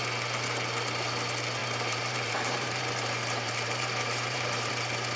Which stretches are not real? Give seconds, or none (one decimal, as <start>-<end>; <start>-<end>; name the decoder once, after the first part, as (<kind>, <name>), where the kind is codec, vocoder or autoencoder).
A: 1.6-4.7 (vocoder, BigVGAN v2)